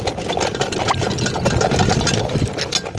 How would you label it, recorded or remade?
recorded